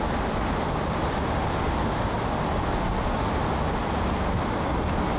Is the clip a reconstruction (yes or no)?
no